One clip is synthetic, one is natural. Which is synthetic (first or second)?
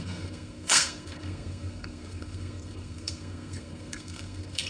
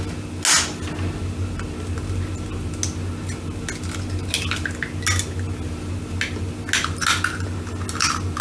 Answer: first